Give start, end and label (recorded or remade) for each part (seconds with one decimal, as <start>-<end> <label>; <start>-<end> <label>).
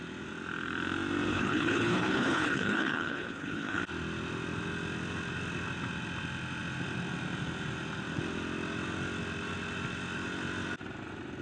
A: 0.0-1.3 recorded; 1.3-3.8 remade; 3.8-11.4 recorded